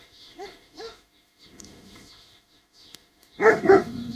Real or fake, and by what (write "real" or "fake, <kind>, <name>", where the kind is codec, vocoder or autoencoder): fake, autoencoder, DAC-VAE